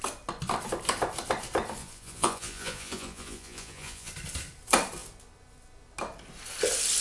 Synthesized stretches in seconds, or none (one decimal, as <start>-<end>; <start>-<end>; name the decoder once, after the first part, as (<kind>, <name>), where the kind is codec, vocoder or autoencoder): 1.8-4.1 (vocoder, Vocos)